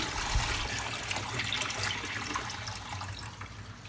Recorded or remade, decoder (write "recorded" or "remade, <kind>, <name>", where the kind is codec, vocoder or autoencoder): recorded